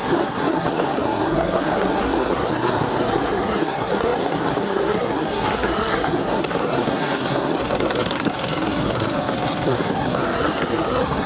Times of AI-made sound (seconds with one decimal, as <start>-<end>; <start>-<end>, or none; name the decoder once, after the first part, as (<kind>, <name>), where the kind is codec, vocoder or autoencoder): 0.0-11.3 (codec, SNAC)